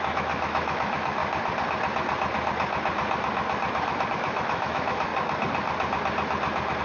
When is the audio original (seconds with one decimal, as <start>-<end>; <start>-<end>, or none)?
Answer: 1.2-4.1; 5.1-6.8